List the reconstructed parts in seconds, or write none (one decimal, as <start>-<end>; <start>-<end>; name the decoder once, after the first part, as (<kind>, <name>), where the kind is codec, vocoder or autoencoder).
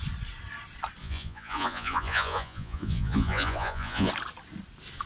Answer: 1.0-4.1 (vocoder, Vocos)